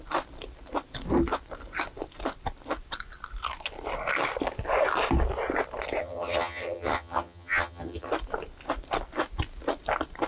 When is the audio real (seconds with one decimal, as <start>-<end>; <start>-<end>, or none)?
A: 0.0-6.0; 8.1-10.3